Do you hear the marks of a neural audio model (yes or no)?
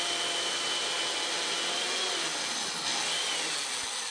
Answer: no